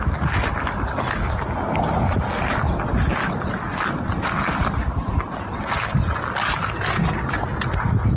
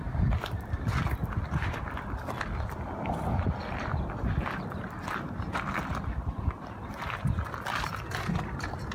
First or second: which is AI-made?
second